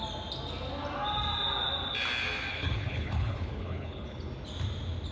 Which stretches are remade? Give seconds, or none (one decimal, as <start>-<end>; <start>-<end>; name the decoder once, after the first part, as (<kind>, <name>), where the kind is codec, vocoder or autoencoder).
2.5-4.3 (codec, HILCodec)

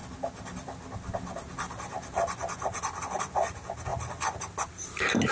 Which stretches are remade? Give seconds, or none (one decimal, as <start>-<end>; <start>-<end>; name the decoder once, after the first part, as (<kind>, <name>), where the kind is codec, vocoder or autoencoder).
none

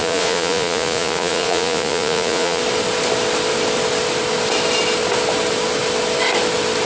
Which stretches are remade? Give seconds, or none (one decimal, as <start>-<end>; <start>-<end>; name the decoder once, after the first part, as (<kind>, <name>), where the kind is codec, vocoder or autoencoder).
0.0-2.6 (vocoder, Vocos)

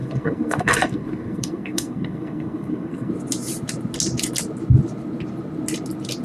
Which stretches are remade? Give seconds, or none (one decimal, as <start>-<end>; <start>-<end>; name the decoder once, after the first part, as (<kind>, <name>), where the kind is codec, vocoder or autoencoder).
0.0-3.1 (codec, SNAC)

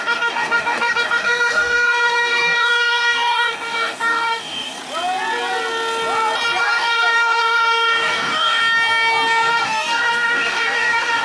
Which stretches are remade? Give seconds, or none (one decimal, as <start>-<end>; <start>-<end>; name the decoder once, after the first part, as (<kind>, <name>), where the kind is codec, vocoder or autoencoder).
0.0-4.8 (codec, DAC); 6.6-8.6; 9.5-11.2

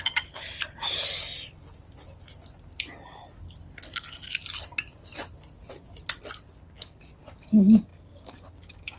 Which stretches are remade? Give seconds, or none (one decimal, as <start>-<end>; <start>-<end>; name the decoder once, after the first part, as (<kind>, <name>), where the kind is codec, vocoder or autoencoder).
none

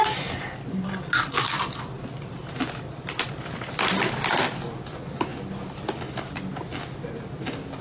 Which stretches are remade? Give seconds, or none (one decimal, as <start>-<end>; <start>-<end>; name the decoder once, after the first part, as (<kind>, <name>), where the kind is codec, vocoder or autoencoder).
none

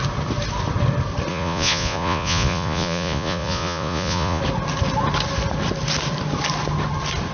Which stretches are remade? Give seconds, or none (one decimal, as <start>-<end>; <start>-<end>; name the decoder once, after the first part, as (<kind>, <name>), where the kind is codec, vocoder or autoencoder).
1.3-4.4 (vocoder, Vocos)